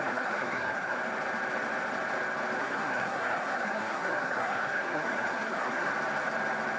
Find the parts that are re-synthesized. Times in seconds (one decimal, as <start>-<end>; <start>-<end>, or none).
0.0-1.0; 2.6-5.9